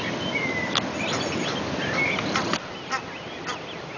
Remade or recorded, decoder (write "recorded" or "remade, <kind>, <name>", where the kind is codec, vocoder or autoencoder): recorded